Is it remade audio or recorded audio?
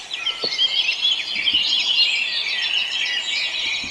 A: remade